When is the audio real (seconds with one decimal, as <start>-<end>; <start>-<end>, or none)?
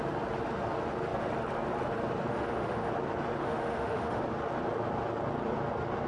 0.0-2.3; 2.9-3.4; 4.2-6.1